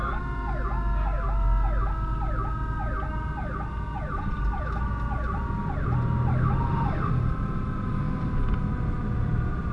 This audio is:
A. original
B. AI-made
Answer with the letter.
A